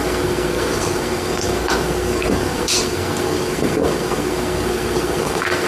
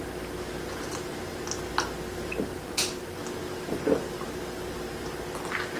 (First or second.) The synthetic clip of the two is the first